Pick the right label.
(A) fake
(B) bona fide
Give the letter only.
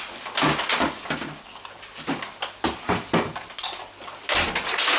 B